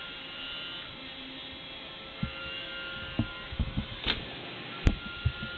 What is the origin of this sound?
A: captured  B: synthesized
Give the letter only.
A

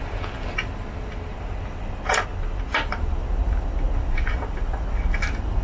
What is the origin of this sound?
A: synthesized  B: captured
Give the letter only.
B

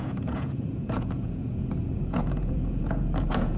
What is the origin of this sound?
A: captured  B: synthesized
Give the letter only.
B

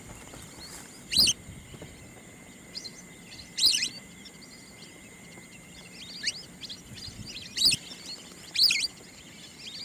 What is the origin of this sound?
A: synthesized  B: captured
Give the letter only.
B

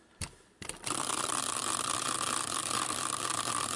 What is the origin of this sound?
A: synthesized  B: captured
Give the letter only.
A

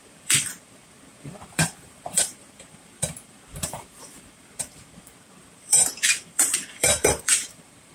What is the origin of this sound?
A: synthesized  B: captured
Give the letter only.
A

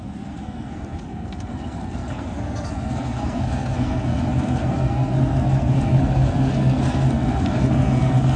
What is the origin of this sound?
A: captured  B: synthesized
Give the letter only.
B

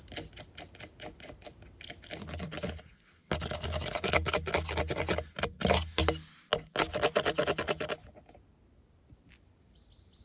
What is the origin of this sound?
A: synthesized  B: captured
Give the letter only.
B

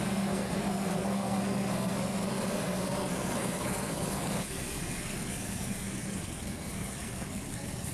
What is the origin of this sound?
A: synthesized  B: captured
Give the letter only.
A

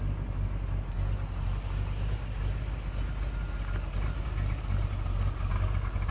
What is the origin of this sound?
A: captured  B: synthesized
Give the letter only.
A